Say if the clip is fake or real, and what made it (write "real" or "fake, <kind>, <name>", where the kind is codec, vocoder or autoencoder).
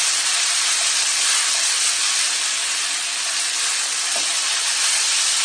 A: fake, vocoder, BigVGAN v2